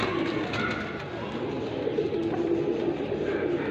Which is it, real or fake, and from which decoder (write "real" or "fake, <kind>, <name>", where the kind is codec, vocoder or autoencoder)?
real